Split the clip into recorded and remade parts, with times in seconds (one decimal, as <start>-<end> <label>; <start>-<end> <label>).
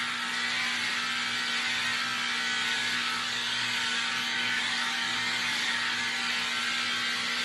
0.0-2.7 recorded; 2.7-6.3 remade; 6.3-7.4 recorded